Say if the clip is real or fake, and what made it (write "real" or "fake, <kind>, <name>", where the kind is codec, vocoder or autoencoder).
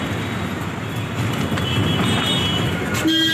real